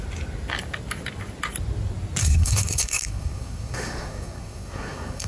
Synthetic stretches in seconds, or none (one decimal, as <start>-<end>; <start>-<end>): 2.2-5.3